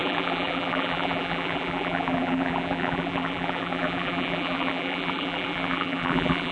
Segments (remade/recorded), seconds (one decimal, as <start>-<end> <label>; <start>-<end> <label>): 0.0-6.5 remade